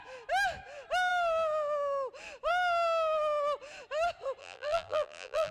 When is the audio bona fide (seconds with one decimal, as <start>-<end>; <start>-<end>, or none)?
0.0-4.4